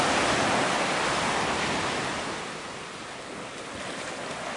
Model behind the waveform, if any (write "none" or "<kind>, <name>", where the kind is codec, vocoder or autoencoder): none